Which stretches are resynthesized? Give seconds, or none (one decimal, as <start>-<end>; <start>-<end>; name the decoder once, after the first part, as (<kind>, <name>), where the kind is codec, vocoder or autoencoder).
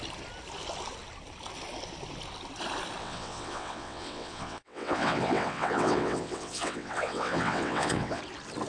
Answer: 3.0-8.2 (vocoder, WaveNeXt)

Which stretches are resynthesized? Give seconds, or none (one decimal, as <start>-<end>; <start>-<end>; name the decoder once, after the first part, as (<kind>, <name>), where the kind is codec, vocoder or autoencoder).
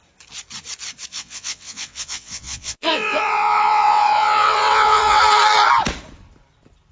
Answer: 1.1-5.2 (vocoder, WaveNeXt)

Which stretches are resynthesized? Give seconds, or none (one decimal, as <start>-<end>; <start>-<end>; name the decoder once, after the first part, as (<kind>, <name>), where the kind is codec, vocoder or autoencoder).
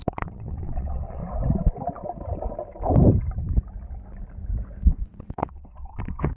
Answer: 0.0-1.2 (vocoder, WaveNeXt); 5.0-6.4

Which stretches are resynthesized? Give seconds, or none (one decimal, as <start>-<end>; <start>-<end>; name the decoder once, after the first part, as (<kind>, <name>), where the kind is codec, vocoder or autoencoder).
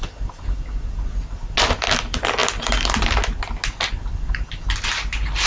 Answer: none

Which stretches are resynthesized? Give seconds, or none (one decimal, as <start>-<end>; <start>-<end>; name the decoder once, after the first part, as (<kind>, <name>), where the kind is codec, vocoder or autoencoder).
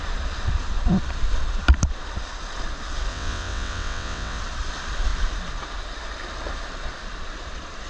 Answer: 3.1-4.4 (vocoder, WaveNeXt)